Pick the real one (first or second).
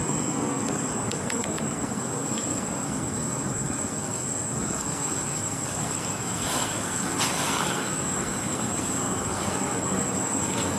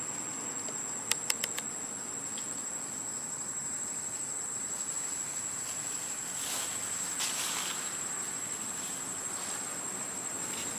second